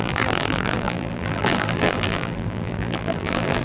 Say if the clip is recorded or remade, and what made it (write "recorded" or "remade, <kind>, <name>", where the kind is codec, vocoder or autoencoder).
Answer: remade, vocoder, BigVGAN v2